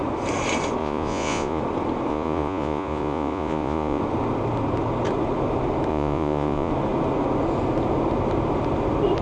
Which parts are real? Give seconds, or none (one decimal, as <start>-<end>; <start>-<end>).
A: 0.0-0.8; 1.6-2.1; 4.0-5.9; 6.7-9.2